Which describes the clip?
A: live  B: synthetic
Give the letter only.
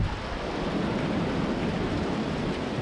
A